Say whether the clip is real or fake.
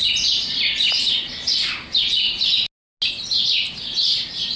real